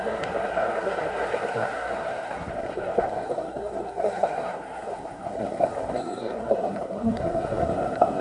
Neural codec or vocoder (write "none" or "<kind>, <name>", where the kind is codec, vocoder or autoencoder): codec, SNAC